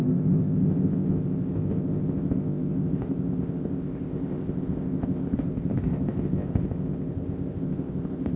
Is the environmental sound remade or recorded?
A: remade